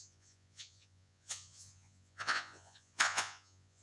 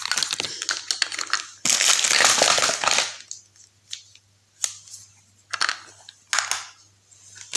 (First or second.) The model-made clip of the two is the first